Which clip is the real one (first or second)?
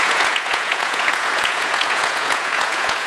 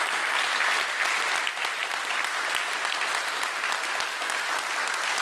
second